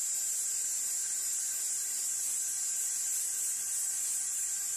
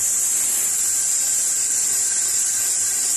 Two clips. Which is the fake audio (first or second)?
second